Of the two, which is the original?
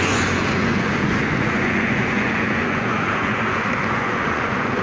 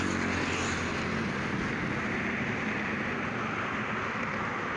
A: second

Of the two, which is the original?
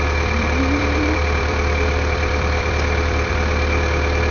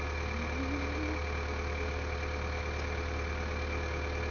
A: second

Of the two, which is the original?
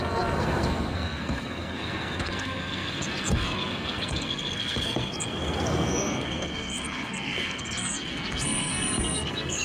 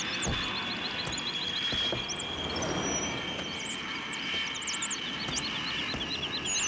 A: second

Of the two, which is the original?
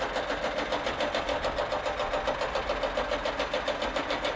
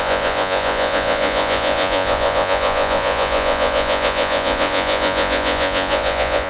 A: first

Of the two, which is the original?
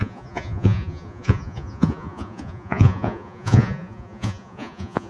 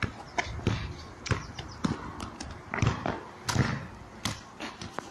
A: second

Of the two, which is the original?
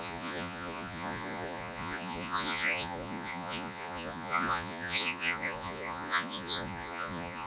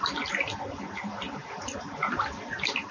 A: second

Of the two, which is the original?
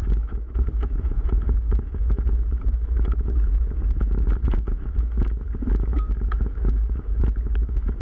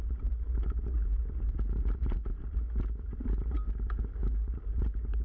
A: second